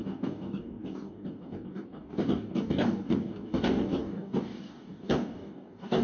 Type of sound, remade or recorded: remade